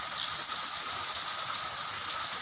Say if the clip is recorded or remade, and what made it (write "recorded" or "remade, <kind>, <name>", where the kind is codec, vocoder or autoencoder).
recorded